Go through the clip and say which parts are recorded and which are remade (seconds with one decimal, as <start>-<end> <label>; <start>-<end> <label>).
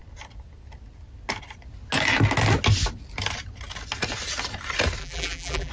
0.0-5.0 recorded; 5.0-5.7 remade